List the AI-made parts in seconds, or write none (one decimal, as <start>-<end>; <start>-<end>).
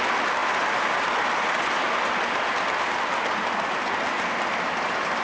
none